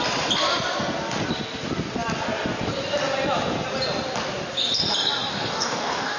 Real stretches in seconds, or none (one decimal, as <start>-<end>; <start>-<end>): 0.0-5.3